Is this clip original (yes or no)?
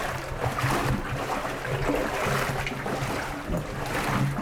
yes